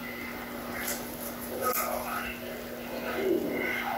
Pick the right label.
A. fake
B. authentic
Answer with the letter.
B